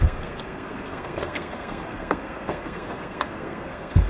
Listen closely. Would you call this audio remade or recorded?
remade